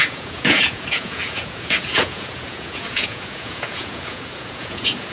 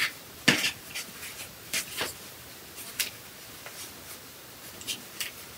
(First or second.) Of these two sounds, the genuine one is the second